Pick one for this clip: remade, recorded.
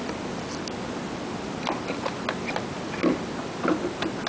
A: recorded